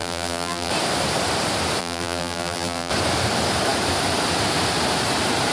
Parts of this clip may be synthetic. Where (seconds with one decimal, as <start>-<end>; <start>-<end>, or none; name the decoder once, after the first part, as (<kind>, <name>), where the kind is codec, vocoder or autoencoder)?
0.0-0.7 (vocoder, BigVGAN v2); 1.8-2.9